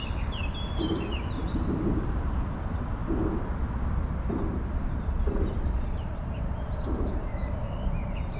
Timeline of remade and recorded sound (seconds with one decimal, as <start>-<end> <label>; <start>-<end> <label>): 0.0-3.0 remade; 3.0-4.4 recorded; 4.4-7.3 remade; 7.3-7.9 recorded; 7.9-8.4 remade